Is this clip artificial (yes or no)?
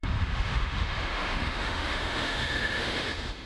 yes